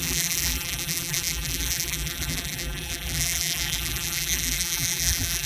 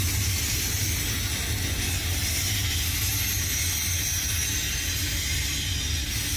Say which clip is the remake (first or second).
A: first